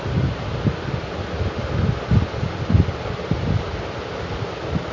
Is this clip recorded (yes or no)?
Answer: yes